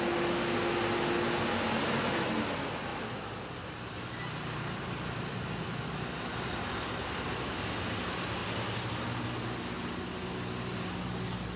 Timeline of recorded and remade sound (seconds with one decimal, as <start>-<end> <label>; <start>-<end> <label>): 0.0-11.6 recorded